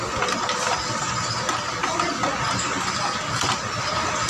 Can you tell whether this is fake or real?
real